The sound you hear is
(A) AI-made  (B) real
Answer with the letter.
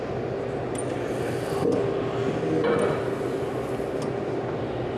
B